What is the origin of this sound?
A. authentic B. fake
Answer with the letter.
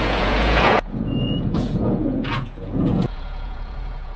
B